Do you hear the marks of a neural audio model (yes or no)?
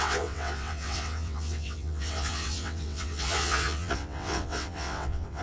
yes